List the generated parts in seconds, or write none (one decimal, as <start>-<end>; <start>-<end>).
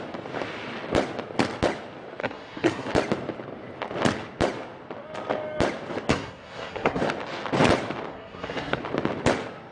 2.2-2.9; 6.1-7.0; 8.1-8.8